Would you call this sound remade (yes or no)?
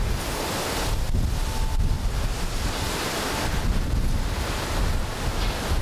no